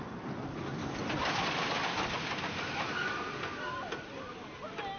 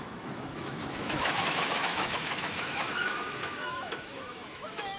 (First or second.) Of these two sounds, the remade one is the second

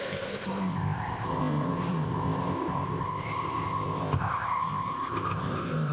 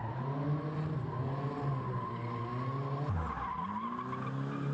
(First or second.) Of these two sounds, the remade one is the first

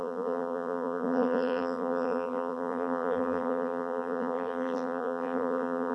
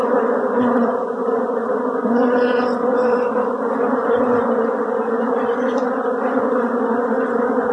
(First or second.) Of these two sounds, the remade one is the first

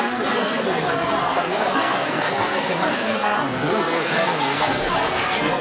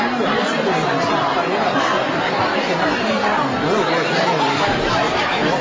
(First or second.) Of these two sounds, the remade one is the first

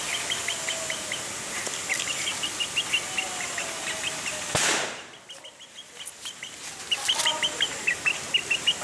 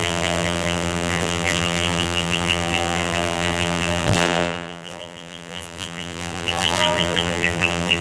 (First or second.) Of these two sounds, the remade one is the second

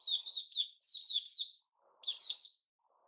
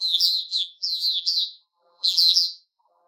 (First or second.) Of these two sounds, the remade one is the second